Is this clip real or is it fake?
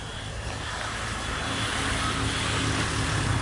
real